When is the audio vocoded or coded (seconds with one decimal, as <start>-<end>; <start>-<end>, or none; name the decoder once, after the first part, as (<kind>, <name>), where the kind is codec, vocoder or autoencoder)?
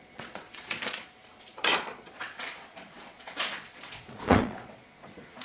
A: 0.0-5.4 (vocoder, Vocos)